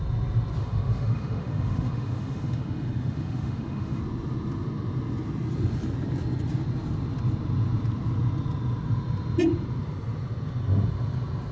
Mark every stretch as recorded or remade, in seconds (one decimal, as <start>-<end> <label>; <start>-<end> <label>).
0.0-0.6 recorded; 0.6-4.0 remade; 4.0-11.5 recorded